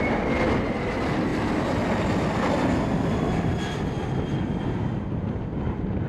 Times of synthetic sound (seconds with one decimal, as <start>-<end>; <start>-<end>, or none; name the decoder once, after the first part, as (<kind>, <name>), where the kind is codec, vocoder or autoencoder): none